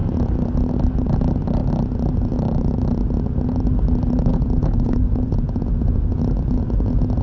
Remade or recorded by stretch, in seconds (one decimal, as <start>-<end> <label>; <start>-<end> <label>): 0.0-4.3 recorded; 4.3-6.2 remade; 6.2-7.2 recorded